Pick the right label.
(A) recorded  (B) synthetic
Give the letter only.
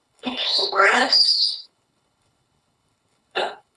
B